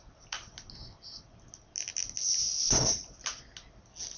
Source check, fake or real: real